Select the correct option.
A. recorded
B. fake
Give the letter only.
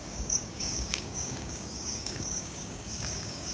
B